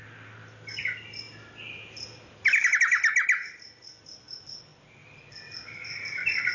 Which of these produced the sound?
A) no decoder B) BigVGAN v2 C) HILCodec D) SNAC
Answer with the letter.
B